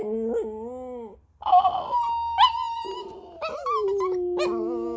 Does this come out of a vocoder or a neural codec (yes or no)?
no